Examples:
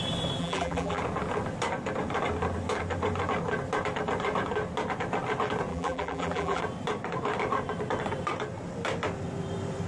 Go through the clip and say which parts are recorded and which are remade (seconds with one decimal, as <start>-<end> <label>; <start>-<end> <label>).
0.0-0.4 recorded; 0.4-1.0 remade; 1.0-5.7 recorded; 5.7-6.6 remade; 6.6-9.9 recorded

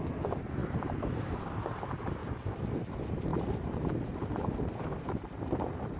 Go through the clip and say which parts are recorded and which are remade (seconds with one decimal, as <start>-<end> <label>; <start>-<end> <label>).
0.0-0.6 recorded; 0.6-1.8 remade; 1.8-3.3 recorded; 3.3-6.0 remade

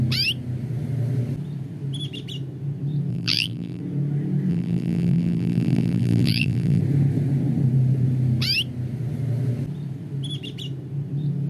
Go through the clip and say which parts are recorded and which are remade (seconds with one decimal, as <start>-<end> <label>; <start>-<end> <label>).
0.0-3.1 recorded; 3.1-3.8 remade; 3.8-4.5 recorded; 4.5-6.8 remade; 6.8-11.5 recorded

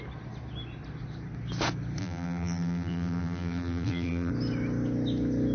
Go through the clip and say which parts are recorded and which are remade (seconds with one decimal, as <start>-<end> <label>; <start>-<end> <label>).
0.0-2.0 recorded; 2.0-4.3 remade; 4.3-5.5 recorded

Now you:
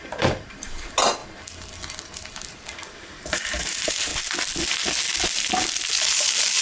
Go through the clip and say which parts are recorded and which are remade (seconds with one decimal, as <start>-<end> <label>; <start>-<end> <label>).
0.0-1.2 remade; 1.2-2.0 recorded; 2.0-4.1 remade; 4.1-5.9 recorded; 5.9-6.6 remade

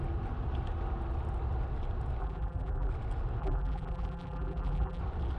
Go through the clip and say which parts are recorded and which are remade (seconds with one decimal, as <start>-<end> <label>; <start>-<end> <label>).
0.0-2.2 recorded; 2.2-2.9 remade; 2.9-3.4 recorded; 3.4-5.0 remade; 5.0-5.4 recorded